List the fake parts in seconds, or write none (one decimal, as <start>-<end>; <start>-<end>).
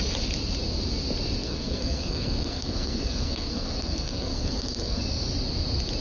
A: 1.4-5.0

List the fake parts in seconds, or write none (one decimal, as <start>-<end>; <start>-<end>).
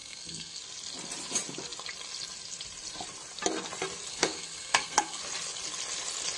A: 0.0-0.6; 4.1-5.2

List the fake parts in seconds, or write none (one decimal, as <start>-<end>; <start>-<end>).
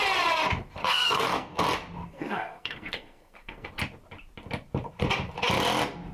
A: 0.8-1.6; 2.1-3.7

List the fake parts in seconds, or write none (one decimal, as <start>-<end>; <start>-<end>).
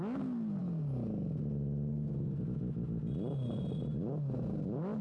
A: 1.9-2.4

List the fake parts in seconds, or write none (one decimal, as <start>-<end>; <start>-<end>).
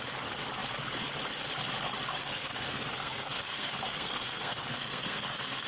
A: 2.2-5.7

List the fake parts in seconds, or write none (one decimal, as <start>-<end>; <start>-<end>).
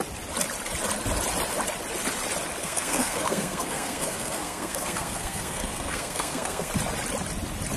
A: 2.6-6.7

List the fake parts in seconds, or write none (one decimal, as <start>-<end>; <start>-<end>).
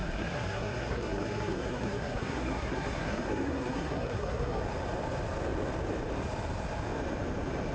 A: 0.0-4.6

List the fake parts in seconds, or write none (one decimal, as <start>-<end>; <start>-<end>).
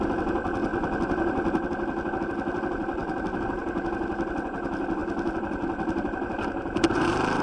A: none